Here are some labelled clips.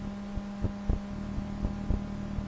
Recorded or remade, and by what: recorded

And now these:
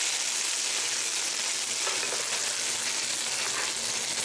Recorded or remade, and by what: recorded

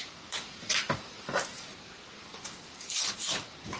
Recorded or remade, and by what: remade, vocoder, BigVGAN v2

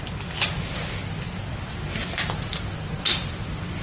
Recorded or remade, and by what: recorded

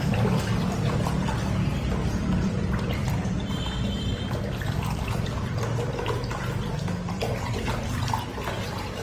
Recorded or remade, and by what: remade, vocoder, BigVGAN v2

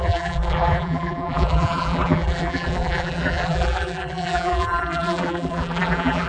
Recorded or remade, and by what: remade, vocoder, BigVGAN v2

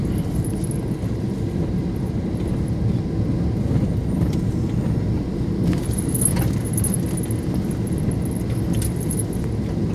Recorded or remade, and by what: recorded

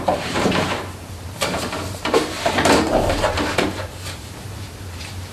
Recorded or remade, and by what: remade, vocoder, BigVGAN v2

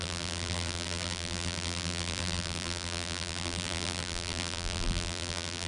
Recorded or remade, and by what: remade, vocoder, BigVGAN v2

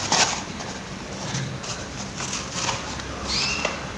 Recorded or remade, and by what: remade, vocoder, BigVGAN v2